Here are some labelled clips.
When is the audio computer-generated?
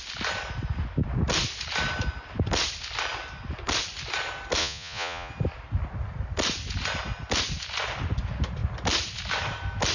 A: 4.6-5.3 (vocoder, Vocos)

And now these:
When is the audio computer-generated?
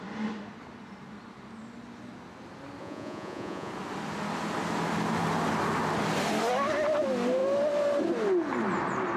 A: 2.8-3.7 (vocoder, Vocos)